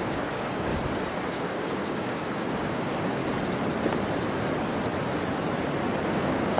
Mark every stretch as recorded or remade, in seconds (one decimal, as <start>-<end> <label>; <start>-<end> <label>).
0.0-0.7 remade; 0.7-1.3 recorded; 1.3-3.2 remade; 3.2-6.1 recorded; 6.1-6.6 remade